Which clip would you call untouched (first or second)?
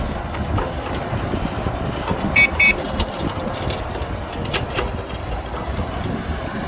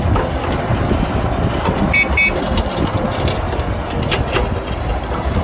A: second